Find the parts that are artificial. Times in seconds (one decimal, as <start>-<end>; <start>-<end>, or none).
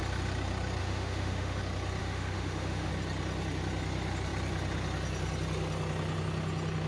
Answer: 0.8-1.6; 2.0-2.9